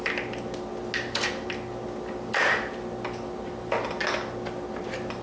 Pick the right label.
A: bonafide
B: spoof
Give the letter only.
A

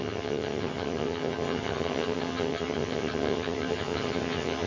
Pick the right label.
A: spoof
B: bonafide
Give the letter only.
A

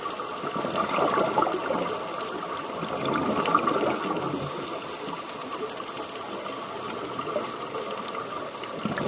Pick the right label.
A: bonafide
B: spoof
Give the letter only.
A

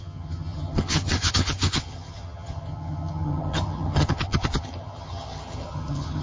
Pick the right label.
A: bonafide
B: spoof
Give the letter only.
B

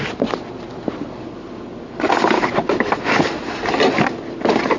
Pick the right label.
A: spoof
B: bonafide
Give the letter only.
B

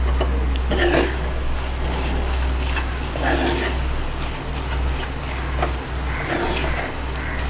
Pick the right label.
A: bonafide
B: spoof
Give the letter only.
A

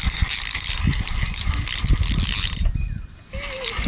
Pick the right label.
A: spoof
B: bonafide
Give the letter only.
B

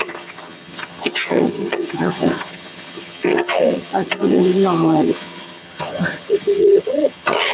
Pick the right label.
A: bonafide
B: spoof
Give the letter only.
B